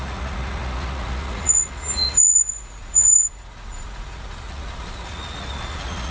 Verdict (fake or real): fake